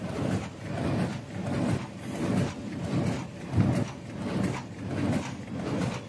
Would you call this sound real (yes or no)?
yes